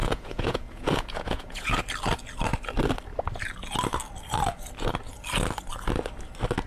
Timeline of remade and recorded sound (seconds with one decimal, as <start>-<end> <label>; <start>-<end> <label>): 0.0-1.8 remade; 1.8-6.7 recorded